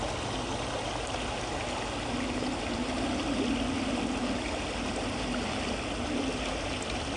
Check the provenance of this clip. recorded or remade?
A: recorded